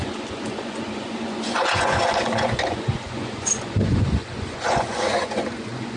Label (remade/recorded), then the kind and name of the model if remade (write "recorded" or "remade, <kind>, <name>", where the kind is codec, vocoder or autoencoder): remade, vocoder, Vocos